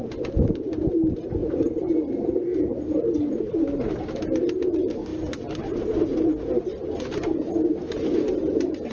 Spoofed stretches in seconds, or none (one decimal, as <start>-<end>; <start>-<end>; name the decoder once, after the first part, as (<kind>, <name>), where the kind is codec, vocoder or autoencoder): 1.4-4.2 (vocoder, BigVGAN v2)